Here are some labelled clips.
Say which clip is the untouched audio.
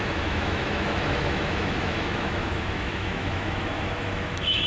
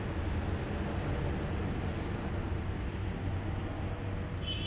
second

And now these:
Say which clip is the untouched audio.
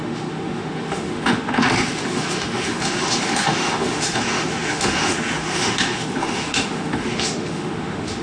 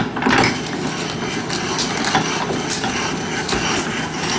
second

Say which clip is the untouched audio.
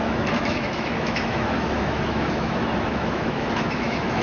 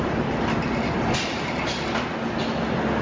second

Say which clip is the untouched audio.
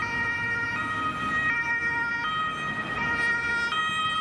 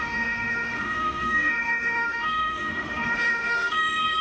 first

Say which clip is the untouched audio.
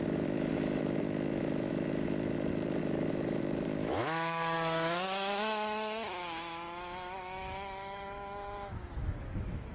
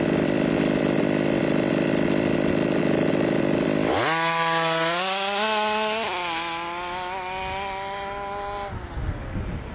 second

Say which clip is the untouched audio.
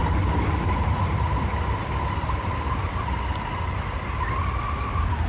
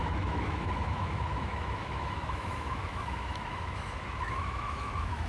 first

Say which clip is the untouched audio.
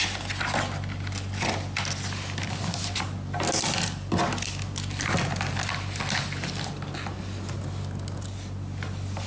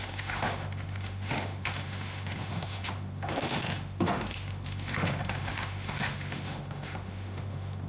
first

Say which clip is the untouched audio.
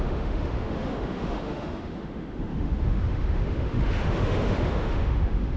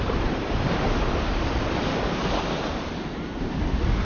second